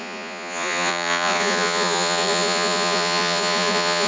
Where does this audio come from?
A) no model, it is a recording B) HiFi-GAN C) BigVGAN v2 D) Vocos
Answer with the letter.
D